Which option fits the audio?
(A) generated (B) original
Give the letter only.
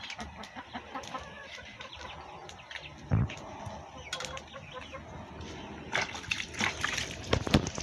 B